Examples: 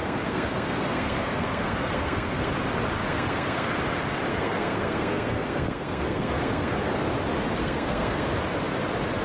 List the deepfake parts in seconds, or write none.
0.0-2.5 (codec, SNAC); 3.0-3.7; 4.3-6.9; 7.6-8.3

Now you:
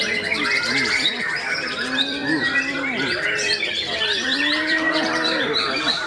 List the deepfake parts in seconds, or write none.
0.0-6.1 (vocoder, BigVGAN v2)

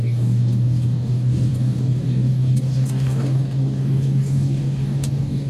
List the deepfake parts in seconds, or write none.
0.0-5.5 (codec, DAC)